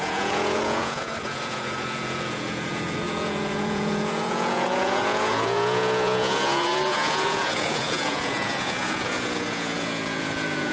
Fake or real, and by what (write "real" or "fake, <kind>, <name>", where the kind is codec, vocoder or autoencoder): fake, vocoder, Vocos